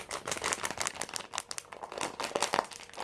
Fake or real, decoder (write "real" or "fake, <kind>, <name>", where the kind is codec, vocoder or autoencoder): real